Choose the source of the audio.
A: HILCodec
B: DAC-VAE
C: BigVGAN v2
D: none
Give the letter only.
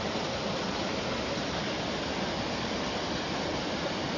D